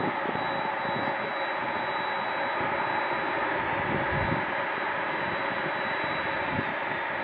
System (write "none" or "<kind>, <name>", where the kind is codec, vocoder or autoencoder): none